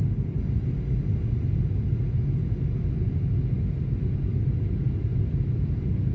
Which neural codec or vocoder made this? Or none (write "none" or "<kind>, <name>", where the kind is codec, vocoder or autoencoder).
none